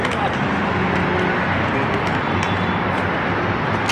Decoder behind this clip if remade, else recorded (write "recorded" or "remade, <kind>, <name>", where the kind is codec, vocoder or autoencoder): recorded